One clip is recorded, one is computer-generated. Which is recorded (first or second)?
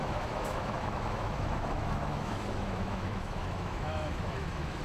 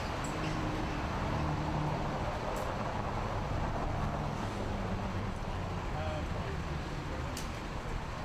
second